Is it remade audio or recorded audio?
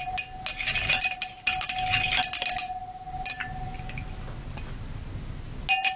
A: recorded